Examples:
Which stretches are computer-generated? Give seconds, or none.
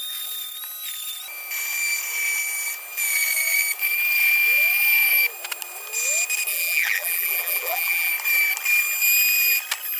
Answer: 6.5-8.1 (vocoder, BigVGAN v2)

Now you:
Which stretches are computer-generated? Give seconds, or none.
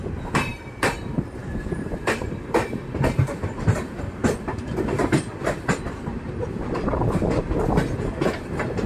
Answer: 1.4-2.2 (vocoder, BigVGAN v2); 4.2-7.7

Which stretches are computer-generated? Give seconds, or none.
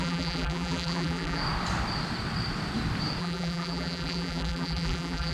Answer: 0.0-1.4 (vocoder, BigVGAN v2); 3.2-5.3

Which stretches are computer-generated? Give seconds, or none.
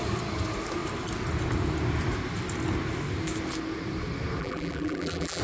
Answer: 4.4-5.4 (vocoder, BigVGAN v2)